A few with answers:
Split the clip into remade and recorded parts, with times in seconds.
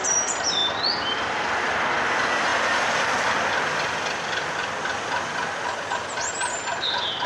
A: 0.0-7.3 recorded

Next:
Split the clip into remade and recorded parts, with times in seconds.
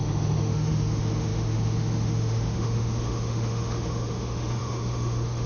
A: 0.0-5.5 remade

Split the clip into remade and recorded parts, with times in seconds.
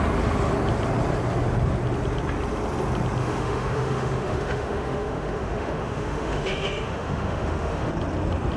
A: 0.0-3.2 recorded; 3.2-7.9 remade; 7.9-8.6 recorded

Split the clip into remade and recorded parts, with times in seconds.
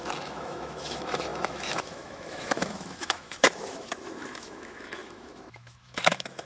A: 0.0-6.5 remade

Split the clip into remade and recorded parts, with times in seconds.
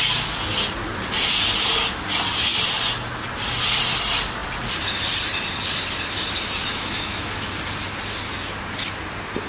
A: 0.0-6.7 recorded; 6.7-7.5 remade; 7.5-9.5 recorded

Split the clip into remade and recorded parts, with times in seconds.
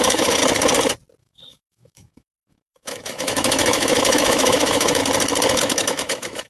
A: 0.0-0.4 remade; 0.4-1.2 recorded; 1.2-5.0 remade; 5.0-5.6 recorded; 5.6-6.5 remade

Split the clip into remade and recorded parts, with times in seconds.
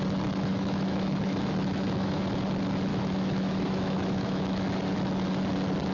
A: 0.0-0.5 recorded; 0.5-2.3 remade; 2.3-2.9 recorded; 2.9-4.7 remade; 4.7-5.9 recorded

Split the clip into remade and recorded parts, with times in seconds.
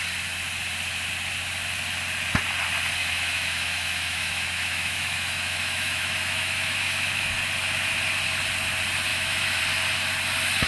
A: 0.0-3.0 recorded; 3.0-7.3 remade; 7.3-9.1 recorded; 9.1-9.6 remade; 9.6-10.7 recorded